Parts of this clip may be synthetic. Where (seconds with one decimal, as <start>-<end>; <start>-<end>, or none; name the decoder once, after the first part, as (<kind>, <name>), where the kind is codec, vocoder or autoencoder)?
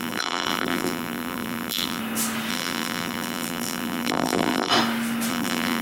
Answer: 0.0-2.0 (vocoder, BigVGAN v2); 2.5-4.7; 5.3-5.8